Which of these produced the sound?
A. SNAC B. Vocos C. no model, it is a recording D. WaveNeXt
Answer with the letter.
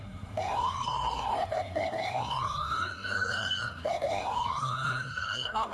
A